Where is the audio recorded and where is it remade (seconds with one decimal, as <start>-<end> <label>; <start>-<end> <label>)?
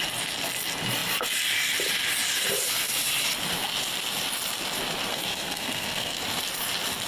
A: 0.0-5.1 recorded; 5.1-6.2 remade; 6.2-7.1 recorded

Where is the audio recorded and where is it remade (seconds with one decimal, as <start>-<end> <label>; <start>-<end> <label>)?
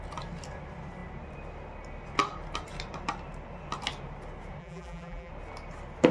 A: 0.0-4.6 recorded; 4.6-5.3 remade; 5.3-6.1 recorded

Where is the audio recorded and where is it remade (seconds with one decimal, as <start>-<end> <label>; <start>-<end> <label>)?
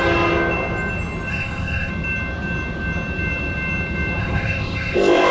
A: 0.0-1.3 recorded; 1.3-1.9 remade; 1.9-4.2 recorded; 4.2-5.3 remade